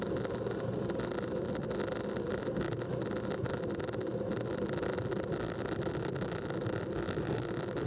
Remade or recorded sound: recorded